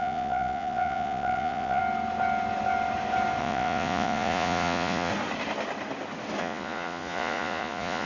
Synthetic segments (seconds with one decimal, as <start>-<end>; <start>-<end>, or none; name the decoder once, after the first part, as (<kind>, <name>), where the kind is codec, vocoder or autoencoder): 0.0-1.8 (vocoder, Vocos); 3.4-5.1; 6.4-8.1